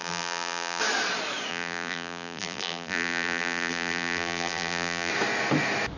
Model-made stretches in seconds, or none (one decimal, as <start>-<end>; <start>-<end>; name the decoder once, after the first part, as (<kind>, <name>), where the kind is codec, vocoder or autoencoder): 0.0-0.8 (vocoder, BigVGAN v2); 1.5-5.1